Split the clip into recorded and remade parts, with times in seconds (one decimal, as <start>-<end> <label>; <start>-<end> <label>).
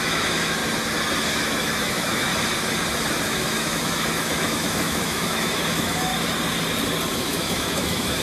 0.0-0.6 remade; 0.6-1.3 recorded; 1.3-2.3 remade; 2.3-3.2 recorded; 3.2-6.1 remade; 6.1-7.1 recorded; 7.1-8.2 remade